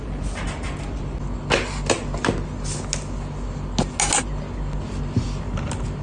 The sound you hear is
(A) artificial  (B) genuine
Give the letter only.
B